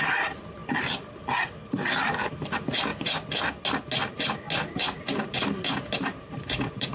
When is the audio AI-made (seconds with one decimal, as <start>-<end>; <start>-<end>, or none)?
0.0-0.6; 1.7-2.9; 4.1-6.9